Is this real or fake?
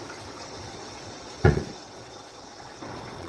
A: fake